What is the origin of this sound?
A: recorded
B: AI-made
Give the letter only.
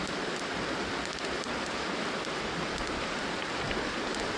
A